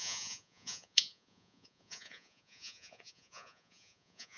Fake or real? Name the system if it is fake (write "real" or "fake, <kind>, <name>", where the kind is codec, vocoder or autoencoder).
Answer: fake, vocoder, Vocos